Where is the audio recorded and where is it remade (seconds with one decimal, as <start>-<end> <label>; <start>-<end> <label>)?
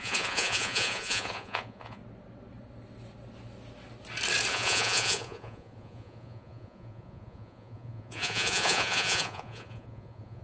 0.0-2.0 remade; 2.0-4.5 recorded; 4.5-10.4 remade